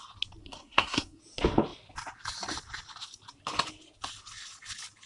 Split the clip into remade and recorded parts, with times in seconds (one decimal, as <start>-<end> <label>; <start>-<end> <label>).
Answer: 0.0-0.4 recorded; 0.4-1.2 remade; 1.2-5.1 recorded